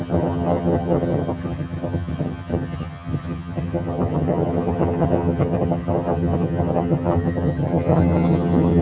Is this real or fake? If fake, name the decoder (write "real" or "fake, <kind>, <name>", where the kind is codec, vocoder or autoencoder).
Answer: fake, vocoder, HiFi-GAN